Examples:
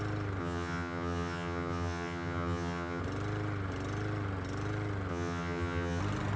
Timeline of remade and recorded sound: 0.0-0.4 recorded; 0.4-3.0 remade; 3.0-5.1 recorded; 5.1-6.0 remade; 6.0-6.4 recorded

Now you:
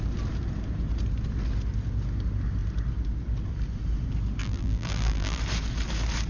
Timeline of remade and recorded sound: 0.0-4.4 recorded; 4.4-5.4 remade; 5.4-6.3 recorded

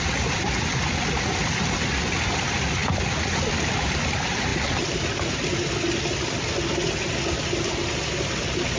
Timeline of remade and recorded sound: 0.0-8.8 recorded